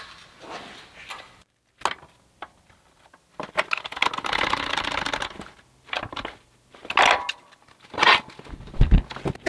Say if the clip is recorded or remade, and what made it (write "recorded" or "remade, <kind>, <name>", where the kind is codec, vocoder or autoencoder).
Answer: recorded